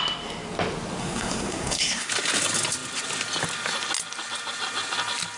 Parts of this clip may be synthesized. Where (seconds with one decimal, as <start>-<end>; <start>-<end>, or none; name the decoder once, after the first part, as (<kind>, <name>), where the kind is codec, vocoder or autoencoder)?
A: 1.0-2.1 (codec, SNAC)